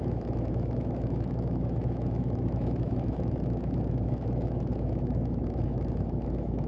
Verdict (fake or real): fake